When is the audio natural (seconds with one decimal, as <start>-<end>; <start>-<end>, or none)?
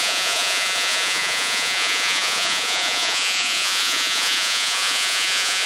none